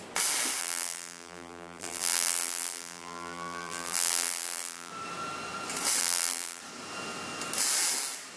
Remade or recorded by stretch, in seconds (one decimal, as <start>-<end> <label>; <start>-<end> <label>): 0.0-0.6 recorded; 0.6-4.9 remade; 4.9-6.0 recorded; 6.0-6.6 remade; 6.6-8.4 recorded